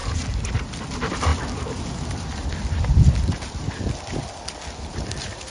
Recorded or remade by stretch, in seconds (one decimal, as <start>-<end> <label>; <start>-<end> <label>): 0.0-5.5 recorded